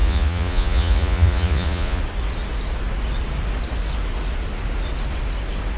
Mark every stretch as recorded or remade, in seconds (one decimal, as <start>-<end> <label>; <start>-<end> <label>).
0.0-2.0 remade; 2.0-5.8 recorded